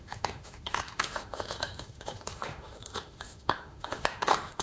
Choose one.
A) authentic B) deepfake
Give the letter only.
B